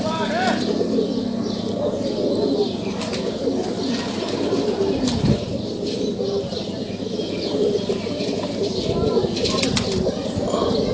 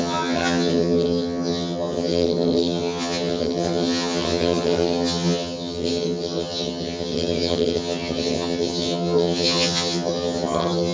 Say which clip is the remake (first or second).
second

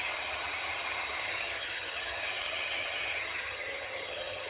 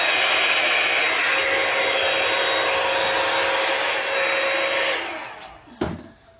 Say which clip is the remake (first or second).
first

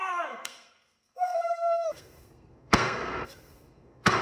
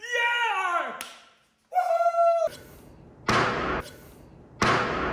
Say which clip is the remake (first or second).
first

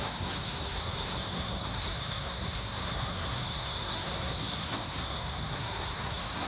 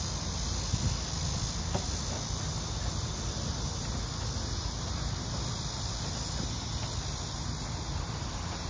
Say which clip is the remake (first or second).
first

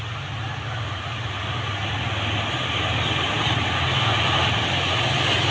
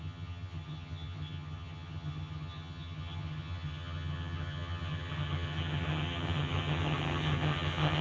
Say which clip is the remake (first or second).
second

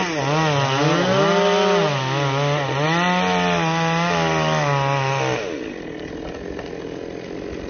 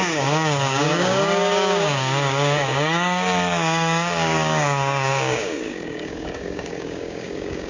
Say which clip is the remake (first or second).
second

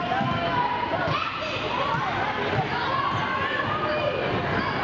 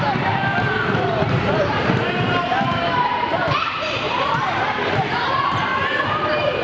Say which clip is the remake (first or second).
second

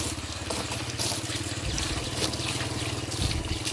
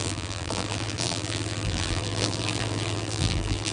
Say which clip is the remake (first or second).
second